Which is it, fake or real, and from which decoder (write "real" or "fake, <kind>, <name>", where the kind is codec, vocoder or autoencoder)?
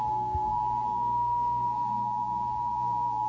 fake, codec, SNAC